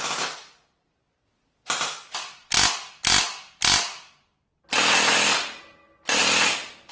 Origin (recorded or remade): recorded